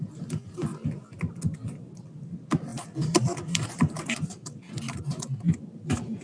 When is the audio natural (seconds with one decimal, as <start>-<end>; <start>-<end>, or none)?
0.0-6.2